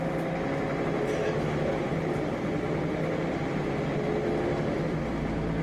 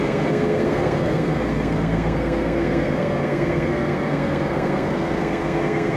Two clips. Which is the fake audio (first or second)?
second